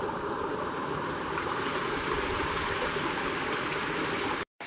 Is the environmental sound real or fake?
fake